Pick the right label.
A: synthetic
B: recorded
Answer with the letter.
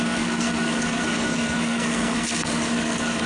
A